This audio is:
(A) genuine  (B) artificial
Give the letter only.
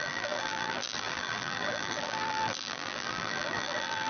B